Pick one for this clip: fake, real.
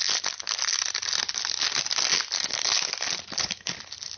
real